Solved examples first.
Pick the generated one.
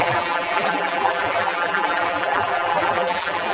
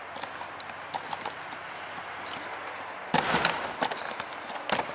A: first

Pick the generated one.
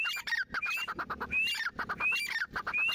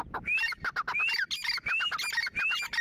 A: first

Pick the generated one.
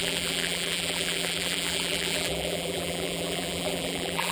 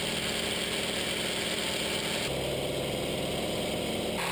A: first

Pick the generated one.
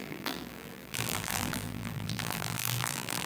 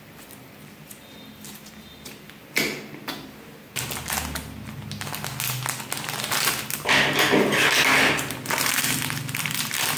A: first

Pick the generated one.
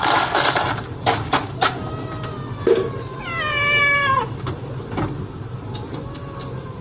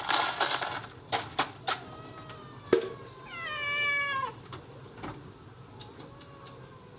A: first